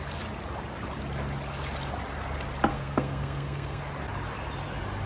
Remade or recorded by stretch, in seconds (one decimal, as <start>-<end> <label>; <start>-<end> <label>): 0.0-2.7 recorded; 2.7-3.8 remade; 3.8-5.1 recorded